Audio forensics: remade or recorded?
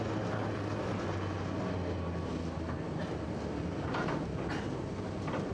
recorded